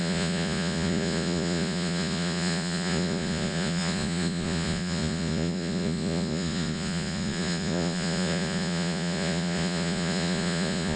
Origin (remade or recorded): remade